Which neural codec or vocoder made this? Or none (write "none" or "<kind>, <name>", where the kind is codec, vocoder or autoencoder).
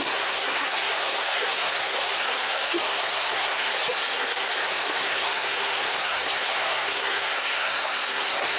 codec, SNAC